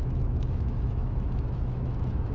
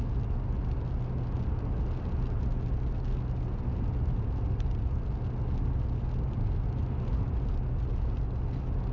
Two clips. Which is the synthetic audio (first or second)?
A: first